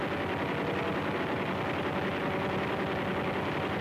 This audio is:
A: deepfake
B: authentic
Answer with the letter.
B